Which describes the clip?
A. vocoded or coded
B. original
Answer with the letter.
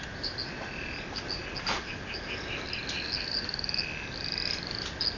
B